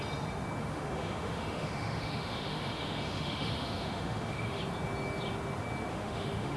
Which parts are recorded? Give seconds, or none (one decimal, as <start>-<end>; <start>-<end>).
0.0-0.6; 4.6-5.9